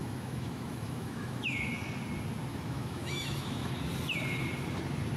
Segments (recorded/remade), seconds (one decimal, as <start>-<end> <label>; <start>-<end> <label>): 0.0-1.7 remade; 1.7-2.5 recorded; 2.5-3.7 remade; 3.7-5.2 recorded